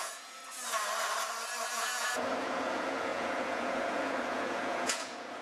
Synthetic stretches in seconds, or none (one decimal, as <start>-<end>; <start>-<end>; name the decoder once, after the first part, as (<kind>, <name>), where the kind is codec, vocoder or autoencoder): 0.0-0.4 (vocoder, Vocos); 1.7-5.4